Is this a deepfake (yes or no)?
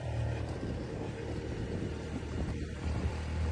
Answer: yes